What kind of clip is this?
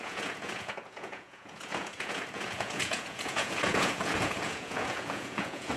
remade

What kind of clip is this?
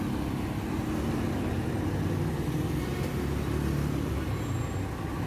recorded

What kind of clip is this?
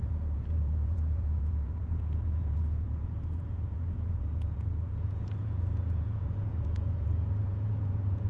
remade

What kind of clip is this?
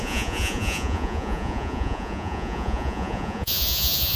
remade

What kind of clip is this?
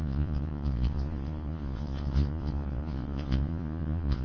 remade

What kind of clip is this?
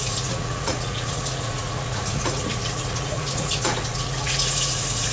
remade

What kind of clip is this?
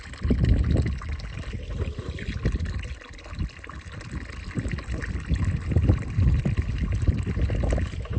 recorded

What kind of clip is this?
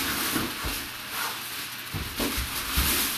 recorded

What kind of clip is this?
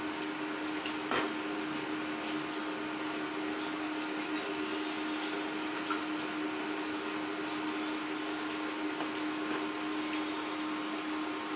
recorded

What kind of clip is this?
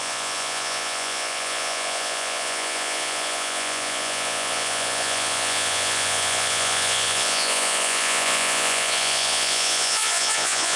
remade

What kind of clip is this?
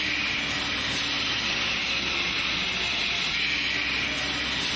recorded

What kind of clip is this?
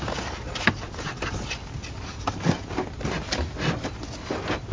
recorded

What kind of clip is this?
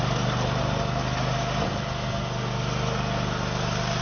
recorded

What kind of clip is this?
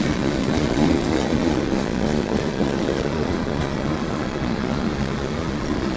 remade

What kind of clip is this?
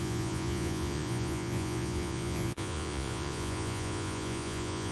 remade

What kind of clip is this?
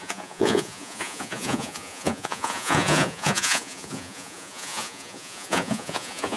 remade